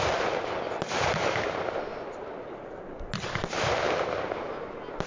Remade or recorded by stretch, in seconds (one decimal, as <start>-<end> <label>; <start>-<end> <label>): 0.0-5.1 recorded